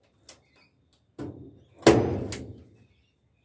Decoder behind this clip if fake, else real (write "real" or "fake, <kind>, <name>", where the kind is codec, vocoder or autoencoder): real